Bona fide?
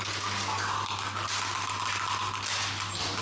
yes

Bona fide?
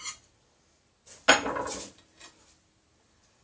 yes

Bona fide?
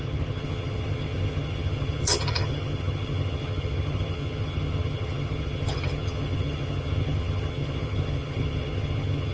no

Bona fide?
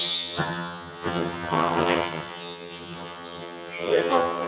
no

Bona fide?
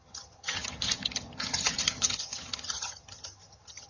no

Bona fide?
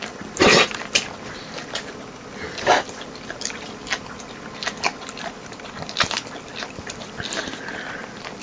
yes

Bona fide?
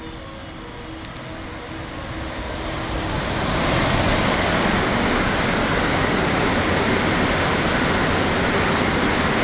yes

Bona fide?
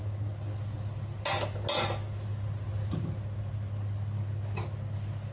yes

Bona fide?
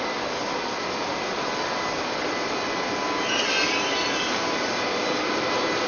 yes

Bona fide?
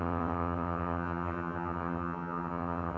no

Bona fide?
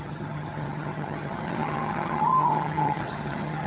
no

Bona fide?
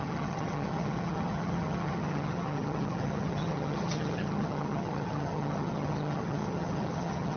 no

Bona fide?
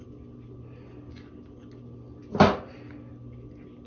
yes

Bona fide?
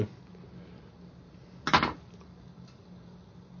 yes